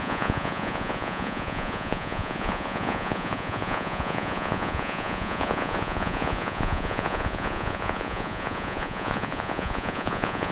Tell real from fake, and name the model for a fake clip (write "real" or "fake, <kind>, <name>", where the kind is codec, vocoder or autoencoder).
fake, vocoder, Vocos